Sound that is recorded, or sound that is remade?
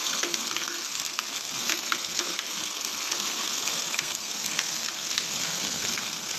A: remade